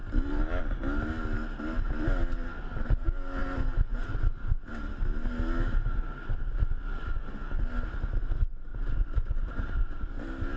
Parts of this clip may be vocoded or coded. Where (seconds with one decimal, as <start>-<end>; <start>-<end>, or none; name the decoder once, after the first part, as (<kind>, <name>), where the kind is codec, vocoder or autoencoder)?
8.7-10.6 (vocoder, BigVGAN v2)